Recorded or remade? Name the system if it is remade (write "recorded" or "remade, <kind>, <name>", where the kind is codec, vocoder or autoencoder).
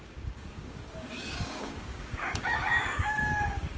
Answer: remade, codec, DAC